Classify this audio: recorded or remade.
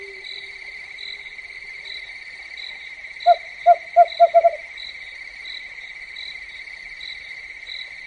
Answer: recorded